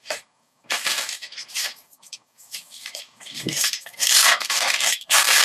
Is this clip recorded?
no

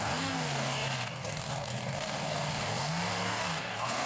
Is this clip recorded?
no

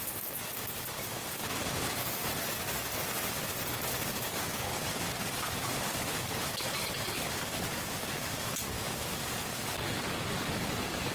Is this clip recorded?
no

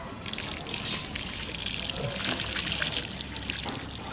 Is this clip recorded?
yes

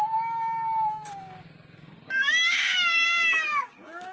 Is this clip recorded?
no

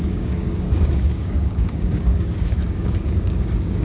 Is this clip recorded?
no